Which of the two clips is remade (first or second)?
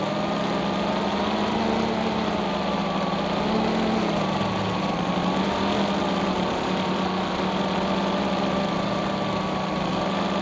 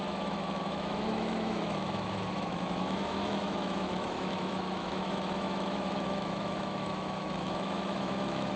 second